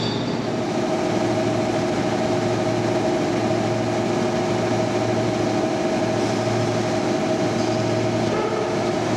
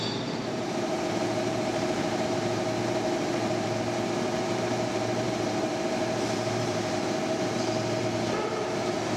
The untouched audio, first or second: first